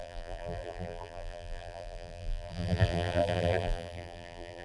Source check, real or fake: fake